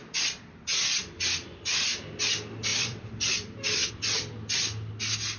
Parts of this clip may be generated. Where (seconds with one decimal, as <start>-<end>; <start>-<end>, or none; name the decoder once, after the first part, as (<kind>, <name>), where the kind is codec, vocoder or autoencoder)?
2.7-3.9 (vocoder, BigVGAN v2)